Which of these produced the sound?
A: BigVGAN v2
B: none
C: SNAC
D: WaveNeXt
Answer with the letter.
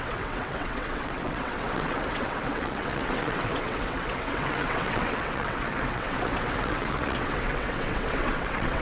D